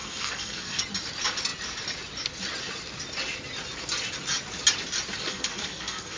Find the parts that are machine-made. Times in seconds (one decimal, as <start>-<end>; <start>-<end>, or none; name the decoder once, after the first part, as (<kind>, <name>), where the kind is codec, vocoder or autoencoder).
0.0-0.8 (codec, SNAC); 5.3-6.2

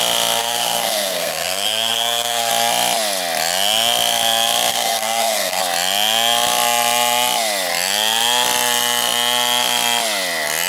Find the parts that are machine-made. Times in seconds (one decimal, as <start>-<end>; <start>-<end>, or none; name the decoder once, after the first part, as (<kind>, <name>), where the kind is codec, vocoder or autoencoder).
0.4-2.5 (codec, SNAC); 4.7-5.6

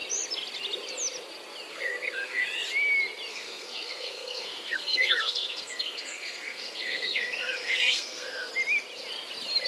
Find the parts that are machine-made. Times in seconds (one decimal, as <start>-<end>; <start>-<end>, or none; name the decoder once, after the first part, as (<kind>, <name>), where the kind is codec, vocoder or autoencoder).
1.7-2.4 (codec, SNAC); 3.3-8.5